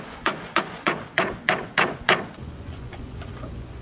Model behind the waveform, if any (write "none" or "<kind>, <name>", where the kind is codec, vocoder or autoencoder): vocoder, Vocos